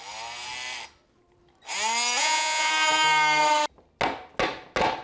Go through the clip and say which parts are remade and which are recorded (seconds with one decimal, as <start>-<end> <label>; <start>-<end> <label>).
0.0-2.2 recorded; 2.2-2.7 remade; 2.7-5.0 recorded